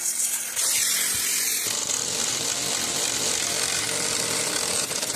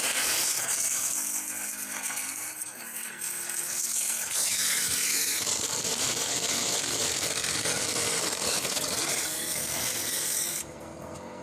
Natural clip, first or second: first